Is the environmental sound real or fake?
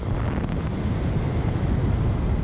real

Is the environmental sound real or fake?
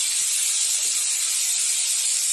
real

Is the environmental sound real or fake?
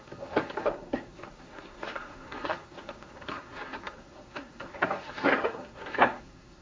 fake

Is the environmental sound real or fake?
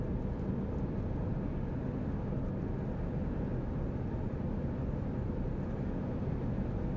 real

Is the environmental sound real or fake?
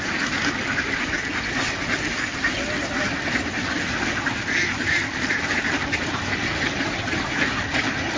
real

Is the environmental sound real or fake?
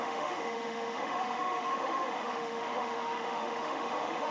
fake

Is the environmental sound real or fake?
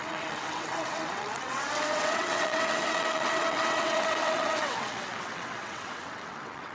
fake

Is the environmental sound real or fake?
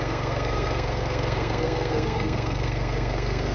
fake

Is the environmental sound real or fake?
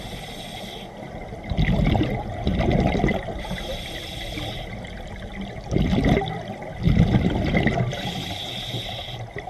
real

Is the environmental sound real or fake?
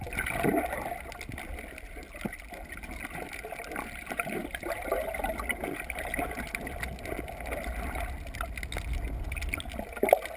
real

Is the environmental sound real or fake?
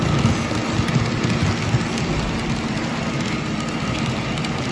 real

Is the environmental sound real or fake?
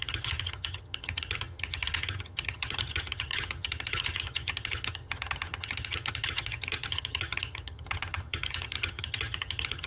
fake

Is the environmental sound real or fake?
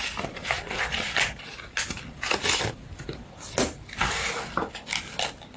real